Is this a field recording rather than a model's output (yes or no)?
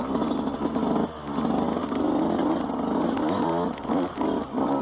yes